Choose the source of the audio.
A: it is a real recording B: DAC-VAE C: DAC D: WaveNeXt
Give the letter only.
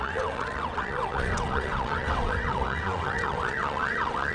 D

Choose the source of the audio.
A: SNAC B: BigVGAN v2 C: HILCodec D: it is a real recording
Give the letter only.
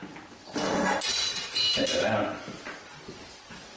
D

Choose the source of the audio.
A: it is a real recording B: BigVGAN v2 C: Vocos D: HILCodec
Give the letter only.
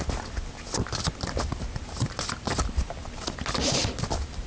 A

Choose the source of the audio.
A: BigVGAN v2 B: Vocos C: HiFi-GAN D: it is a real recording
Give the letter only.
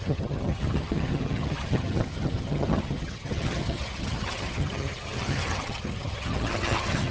C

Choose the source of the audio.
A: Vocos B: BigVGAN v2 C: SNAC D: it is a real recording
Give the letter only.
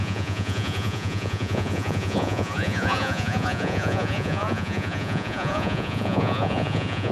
A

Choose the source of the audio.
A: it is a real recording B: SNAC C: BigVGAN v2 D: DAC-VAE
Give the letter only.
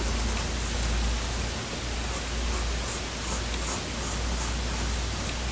A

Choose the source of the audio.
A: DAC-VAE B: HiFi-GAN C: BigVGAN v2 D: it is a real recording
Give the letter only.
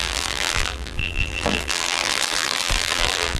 C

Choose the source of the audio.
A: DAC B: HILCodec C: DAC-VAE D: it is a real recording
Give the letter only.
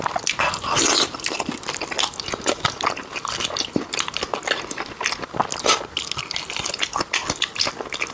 D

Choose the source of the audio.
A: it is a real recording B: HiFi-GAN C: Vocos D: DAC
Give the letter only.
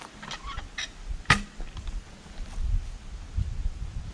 A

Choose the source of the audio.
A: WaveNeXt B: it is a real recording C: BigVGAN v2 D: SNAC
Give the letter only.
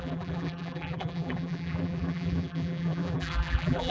C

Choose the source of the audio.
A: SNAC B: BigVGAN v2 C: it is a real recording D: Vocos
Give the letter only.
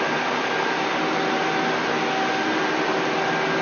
C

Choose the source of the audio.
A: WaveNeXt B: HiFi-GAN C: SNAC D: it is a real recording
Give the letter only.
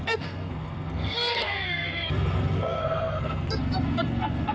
C